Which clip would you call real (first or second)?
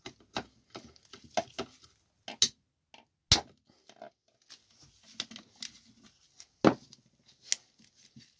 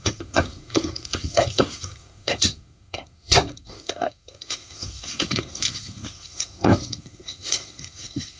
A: first